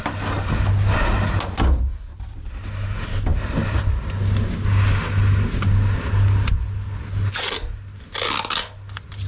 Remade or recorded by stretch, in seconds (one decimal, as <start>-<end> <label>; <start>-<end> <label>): 0.0-9.3 recorded